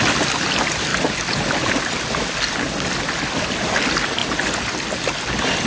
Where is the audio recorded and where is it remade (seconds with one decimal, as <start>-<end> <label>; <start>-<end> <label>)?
0.0-5.7 recorded